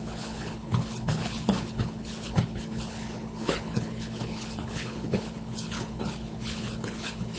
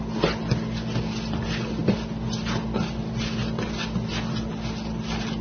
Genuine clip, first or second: second